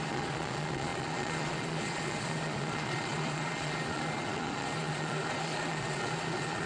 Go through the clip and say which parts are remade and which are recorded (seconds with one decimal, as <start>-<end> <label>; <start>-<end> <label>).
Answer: 0.0-6.7 remade